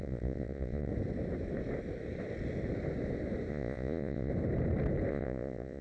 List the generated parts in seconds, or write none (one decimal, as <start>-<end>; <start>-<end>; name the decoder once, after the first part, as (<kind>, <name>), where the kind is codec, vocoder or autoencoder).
0.0-0.9 (vocoder, Vocos); 3.5-4.3; 5.1-5.8